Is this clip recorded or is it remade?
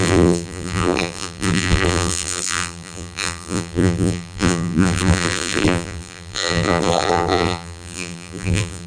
remade